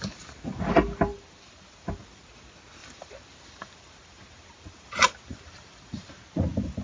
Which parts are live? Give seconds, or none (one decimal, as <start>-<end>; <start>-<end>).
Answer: 0.0-1.1; 2.3-2.8; 6.2-6.8